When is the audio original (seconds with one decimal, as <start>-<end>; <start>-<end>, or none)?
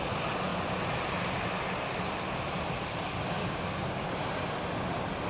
0.0-3.4; 4.1-5.3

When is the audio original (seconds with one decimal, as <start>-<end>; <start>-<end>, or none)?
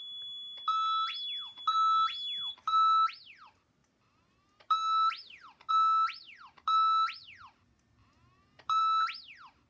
0.0-9.7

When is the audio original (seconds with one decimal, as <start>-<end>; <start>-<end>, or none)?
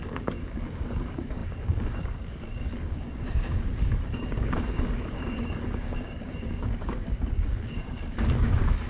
none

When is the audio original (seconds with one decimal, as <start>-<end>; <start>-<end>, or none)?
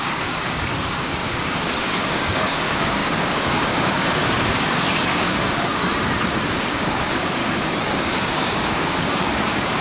5.8-6.6; 7.4-7.9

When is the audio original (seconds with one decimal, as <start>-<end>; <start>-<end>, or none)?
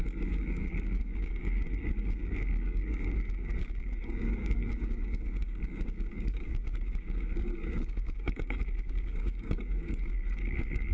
none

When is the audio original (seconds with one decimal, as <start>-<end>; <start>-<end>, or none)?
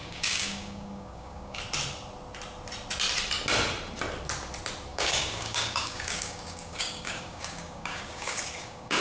1.6-4.9